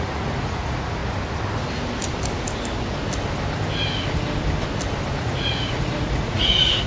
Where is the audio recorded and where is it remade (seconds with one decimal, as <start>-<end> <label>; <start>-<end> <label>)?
0.0-1.0 remade; 1.0-5.1 recorded; 5.1-6.9 remade